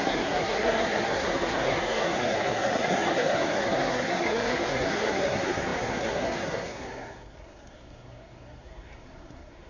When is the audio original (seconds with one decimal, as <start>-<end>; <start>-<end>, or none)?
none